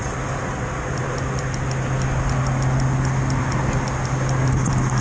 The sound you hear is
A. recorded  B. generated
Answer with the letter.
A